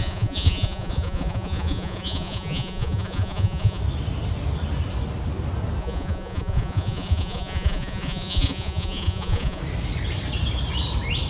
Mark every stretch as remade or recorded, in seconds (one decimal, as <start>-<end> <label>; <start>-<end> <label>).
0.0-3.8 remade; 3.8-5.8 recorded; 5.8-9.6 remade; 9.6-11.3 recorded